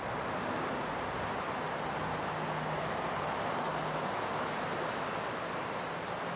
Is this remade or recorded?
recorded